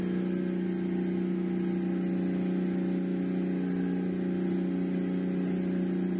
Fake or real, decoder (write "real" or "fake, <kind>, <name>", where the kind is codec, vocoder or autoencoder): real